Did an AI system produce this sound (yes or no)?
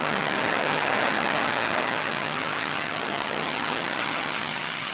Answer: yes